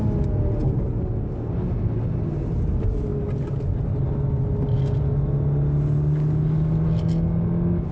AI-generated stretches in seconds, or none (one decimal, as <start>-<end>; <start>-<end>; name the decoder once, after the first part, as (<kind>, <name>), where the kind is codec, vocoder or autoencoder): none

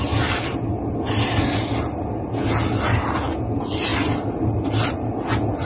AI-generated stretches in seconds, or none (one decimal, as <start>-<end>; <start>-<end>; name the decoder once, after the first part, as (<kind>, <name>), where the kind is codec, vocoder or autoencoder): none

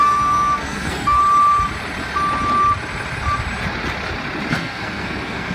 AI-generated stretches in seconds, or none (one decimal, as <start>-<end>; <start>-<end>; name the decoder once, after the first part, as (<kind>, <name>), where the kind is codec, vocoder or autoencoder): 0.0-1.2 (codec, SNAC); 4.5-5.5

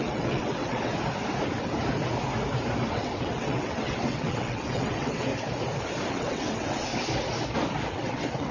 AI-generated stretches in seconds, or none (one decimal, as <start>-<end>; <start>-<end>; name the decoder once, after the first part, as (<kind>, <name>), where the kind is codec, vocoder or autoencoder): 0.0-0.9 (vocoder, WaveNeXt); 2.9-5.3; 6.1-6.9; 7.9-8.5

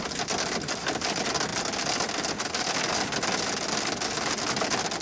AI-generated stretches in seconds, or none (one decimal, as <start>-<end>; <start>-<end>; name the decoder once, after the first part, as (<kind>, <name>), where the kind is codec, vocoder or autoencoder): none

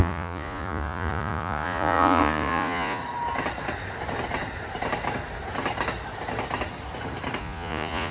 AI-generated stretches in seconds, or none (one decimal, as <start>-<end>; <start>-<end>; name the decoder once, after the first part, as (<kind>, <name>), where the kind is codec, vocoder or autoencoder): 0.0-3.0 (vocoder, Vocos); 7.4-8.1

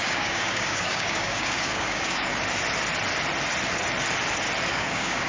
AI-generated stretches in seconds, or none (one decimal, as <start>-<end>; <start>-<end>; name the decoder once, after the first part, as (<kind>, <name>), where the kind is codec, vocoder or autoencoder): 0.0-2.3 (codec, DAC); 4.7-5.3